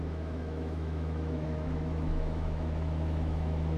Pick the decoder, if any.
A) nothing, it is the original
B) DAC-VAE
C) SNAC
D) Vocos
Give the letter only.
B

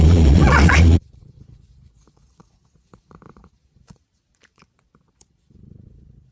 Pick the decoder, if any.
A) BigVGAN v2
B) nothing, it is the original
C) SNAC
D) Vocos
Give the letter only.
D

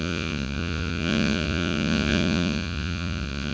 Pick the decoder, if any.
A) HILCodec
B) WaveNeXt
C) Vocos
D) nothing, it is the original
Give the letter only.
C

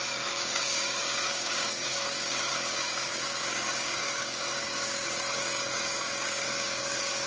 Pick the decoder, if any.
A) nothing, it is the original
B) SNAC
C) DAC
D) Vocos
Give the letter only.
C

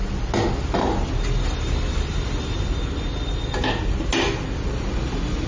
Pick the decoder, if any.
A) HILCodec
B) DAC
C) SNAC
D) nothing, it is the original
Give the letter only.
D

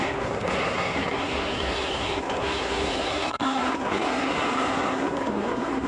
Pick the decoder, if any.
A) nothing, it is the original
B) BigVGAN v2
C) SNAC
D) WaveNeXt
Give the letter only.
C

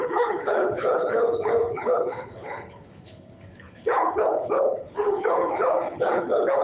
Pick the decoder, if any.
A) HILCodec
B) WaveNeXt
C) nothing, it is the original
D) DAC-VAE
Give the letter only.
A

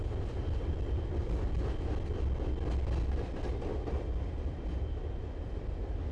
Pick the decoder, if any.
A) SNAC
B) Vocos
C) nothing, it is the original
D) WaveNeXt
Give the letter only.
C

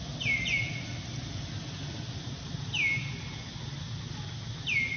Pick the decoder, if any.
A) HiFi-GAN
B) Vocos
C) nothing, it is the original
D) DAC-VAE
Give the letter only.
C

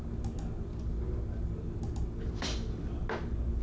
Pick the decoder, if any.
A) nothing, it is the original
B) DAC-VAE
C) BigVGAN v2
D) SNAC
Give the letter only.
A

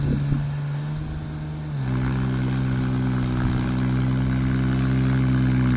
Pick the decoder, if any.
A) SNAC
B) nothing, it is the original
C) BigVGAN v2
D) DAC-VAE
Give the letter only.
B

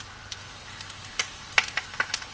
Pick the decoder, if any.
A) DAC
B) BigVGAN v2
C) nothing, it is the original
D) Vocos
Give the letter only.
C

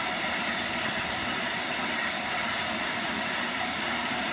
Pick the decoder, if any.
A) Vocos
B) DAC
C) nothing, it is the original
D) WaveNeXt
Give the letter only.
C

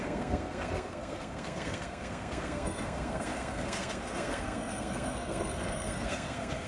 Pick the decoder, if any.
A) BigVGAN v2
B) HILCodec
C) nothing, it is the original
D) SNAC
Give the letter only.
D